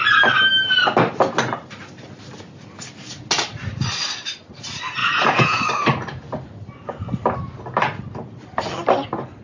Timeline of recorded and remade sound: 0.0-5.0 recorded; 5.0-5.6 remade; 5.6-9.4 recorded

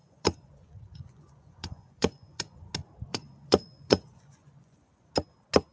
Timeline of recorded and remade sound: 0.0-2.7 remade; 2.7-3.1 recorded; 3.1-5.1 remade; 5.1-5.7 recorded

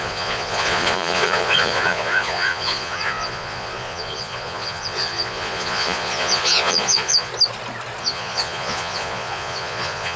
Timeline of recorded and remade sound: 0.0-7.3 remade; 7.3-8.0 recorded; 8.0-10.2 remade